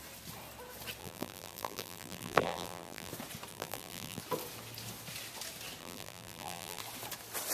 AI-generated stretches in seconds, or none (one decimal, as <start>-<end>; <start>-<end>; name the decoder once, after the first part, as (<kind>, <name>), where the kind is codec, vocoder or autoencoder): 1.0-3.1 (vocoder, BigVGAN v2); 3.5-4.2; 5.8-6.8